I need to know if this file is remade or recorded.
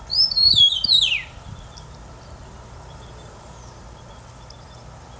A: recorded